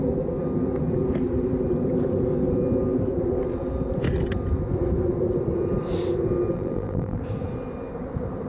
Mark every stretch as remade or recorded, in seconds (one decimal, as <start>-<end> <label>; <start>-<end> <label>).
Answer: 0.0-6.5 recorded; 6.5-7.2 remade; 7.2-8.5 recorded